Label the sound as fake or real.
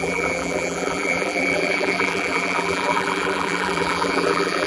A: fake